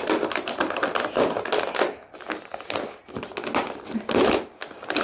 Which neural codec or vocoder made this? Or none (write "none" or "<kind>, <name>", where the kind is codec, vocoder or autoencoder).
none